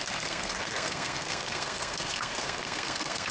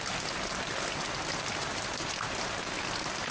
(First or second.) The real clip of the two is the second